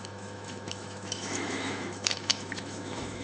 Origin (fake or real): fake